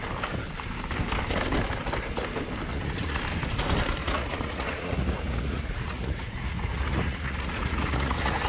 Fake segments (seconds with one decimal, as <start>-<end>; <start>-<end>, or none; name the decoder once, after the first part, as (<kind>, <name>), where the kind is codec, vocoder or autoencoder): 2.7-3.2 (vocoder, Vocos); 4.0-8.5